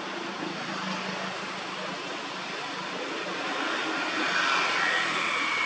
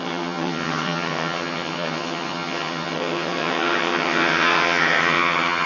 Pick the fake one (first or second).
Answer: second